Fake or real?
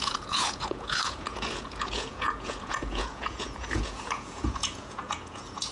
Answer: fake